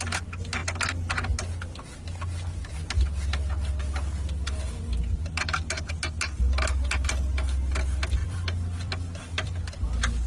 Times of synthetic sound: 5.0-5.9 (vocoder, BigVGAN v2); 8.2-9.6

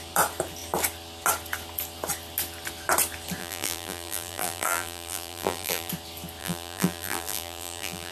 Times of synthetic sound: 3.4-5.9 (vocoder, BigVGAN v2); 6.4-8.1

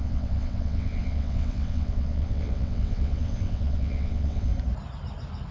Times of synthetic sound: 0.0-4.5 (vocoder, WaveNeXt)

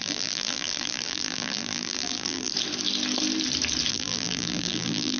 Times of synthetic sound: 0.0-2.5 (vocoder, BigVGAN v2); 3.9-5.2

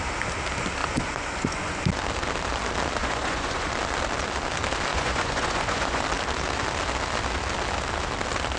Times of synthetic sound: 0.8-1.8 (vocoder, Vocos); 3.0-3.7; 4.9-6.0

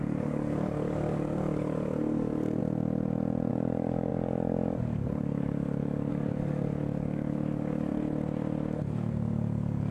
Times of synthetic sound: 0.0-2.6 (codec, DAC); 3.5-7.9; 8.9-9.9

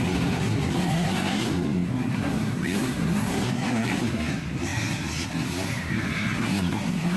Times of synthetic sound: 0.0-7.2 (codec, SNAC)

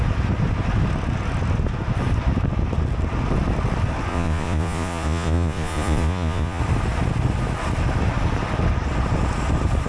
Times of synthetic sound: 4.1-6.6 (vocoder, Vocos)